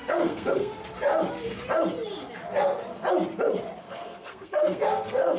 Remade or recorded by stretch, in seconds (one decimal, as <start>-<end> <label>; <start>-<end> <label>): 0.0-0.8 remade; 0.8-3.8 recorded; 3.8-5.4 remade